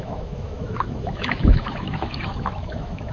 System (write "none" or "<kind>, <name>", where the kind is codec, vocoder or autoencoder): autoencoder, DAC-VAE